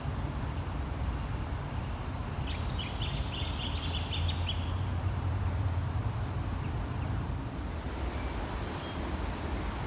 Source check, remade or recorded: recorded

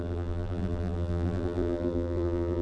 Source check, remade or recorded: remade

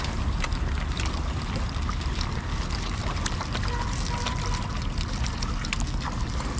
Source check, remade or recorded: recorded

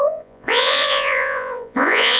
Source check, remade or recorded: remade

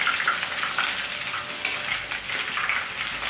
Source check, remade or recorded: recorded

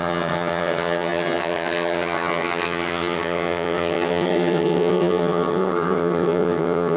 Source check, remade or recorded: remade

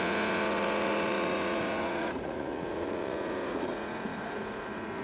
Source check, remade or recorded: remade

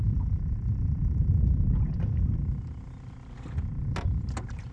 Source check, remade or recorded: recorded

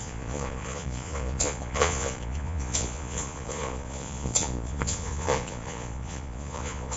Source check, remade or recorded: remade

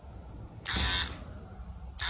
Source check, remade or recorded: recorded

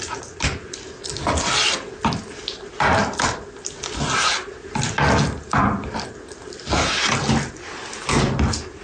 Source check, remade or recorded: recorded